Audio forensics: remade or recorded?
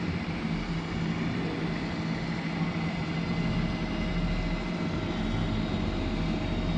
recorded